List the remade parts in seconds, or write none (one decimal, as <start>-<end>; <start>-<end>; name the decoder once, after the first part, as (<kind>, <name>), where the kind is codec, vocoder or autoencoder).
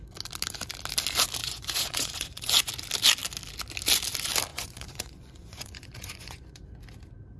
1.4-2.7 (vocoder, Vocos); 4.5-6.6